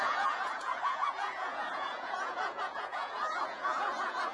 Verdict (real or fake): fake